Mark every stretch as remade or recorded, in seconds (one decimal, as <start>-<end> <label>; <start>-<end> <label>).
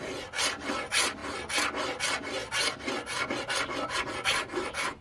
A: 0.0-5.0 recorded